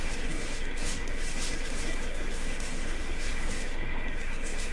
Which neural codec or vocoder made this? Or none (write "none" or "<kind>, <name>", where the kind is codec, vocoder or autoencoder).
codec, SNAC